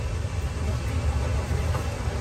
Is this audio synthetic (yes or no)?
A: no